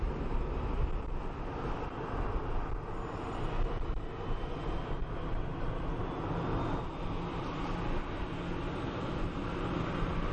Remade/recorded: recorded